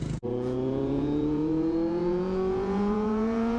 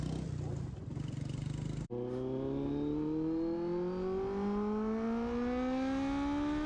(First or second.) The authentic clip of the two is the second